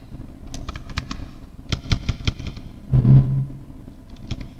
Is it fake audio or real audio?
real